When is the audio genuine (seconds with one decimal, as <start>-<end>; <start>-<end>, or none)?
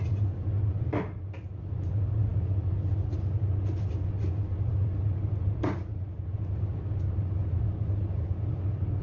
0.0-9.0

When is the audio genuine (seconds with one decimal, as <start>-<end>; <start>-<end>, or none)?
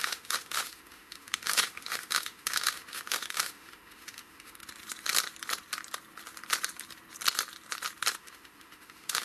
4.6-8.2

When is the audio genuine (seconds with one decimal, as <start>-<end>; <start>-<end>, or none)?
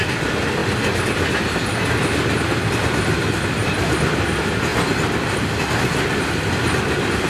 0.0-7.3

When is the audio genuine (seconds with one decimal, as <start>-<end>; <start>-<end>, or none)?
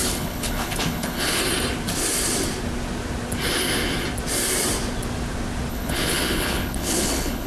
1.4-5.7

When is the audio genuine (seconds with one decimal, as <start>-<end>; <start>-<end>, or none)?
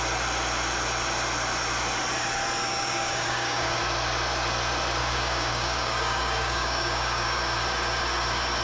0.0-2.7; 3.8-5.0; 7.4-8.6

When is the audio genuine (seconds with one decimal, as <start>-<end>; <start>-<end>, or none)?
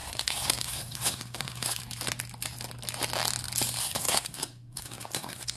1.8-3.8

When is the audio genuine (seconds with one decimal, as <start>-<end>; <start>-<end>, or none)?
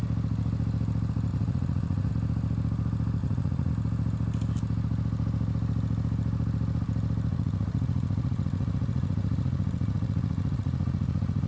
0.0-1.3; 2.1-3.2; 3.7-7.3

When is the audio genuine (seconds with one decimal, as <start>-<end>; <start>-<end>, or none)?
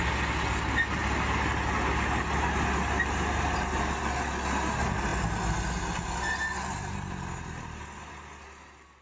0.0-9.0